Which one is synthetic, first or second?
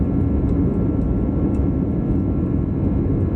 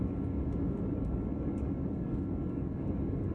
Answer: second